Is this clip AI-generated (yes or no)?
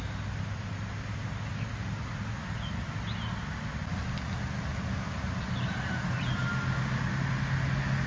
no